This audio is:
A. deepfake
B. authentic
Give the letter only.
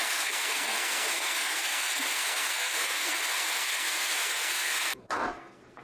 A